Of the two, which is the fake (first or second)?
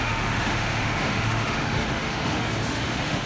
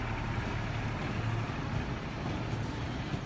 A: first